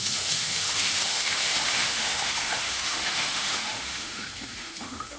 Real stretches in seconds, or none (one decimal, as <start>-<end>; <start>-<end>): none